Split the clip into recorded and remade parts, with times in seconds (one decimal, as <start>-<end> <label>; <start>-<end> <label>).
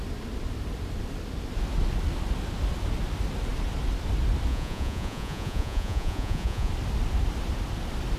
0.0-4.5 recorded; 4.5-6.7 remade; 6.7-8.2 recorded